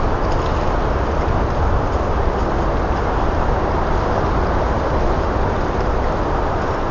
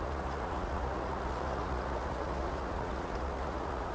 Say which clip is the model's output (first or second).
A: second